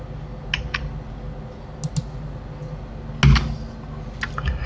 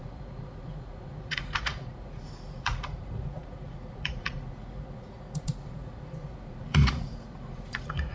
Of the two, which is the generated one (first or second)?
second